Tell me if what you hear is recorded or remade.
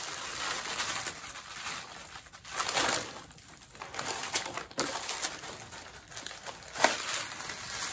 recorded